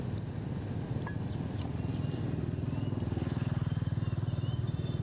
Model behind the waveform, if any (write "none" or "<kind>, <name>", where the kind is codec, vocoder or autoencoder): none